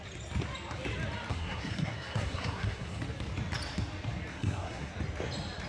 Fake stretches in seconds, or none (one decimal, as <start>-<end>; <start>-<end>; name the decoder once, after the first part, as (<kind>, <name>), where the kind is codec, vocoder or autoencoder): 1.3-3.0 (codec, SNAC); 4.3-4.9